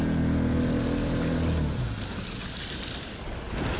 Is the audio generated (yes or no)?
no